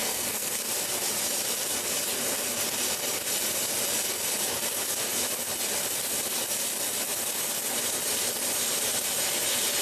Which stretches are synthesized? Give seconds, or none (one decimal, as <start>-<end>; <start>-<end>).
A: 0.0-0.6